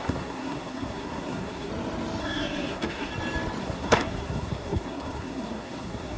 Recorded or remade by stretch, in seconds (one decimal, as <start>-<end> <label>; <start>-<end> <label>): 0.0-1.7 remade; 1.7-2.2 recorded; 2.2-3.1 remade; 3.1-3.6 recorded; 3.6-6.2 remade